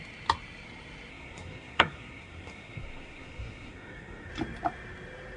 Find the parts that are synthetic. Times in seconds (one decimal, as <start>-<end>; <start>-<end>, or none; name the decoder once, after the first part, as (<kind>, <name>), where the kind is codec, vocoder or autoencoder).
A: 1.1-4.3 (codec, SNAC)